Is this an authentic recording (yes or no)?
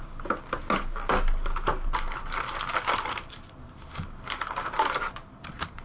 yes